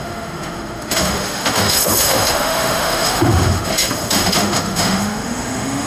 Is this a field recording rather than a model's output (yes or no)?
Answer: no